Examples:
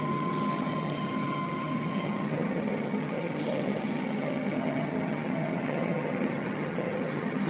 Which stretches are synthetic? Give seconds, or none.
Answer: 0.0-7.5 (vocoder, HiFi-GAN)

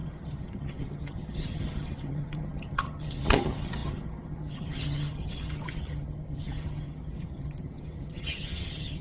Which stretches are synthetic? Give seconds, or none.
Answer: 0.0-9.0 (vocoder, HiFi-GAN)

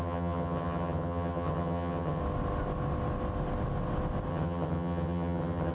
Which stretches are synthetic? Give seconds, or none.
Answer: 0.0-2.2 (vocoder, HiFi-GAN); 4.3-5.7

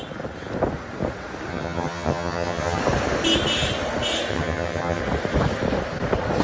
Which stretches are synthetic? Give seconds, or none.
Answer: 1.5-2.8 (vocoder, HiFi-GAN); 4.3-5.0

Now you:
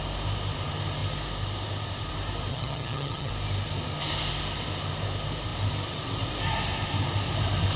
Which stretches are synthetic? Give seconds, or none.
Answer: 2.5-3.3 (vocoder, HiFi-GAN)